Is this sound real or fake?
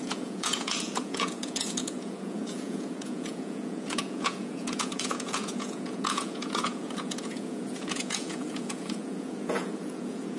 fake